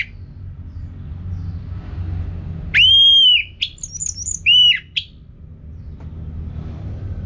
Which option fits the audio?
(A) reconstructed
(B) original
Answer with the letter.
B